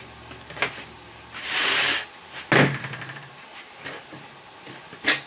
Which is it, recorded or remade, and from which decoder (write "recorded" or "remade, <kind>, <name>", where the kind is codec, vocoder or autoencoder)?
recorded